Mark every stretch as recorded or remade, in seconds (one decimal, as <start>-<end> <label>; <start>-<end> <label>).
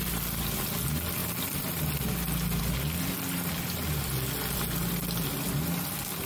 0.0-6.3 recorded